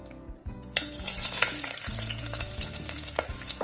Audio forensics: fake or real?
fake